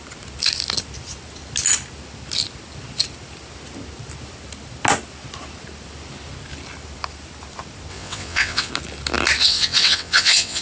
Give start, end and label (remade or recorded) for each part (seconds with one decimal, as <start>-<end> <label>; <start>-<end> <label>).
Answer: 0.0-7.9 recorded; 7.9-8.7 remade; 8.7-9.4 recorded; 9.4-10.6 remade